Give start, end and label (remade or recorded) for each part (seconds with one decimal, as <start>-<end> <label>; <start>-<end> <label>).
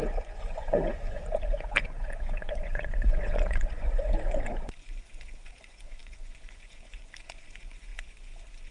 0.0-8.7 remade